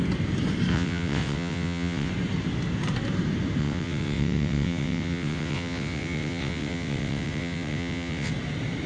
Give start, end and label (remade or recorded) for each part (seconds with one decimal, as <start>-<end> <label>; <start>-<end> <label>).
0.0-0.7 recorded; 0.7-2.1 remade; 2.1-3.6 recorded; 3.6-8.3 remade; 8.3-8.9 recorded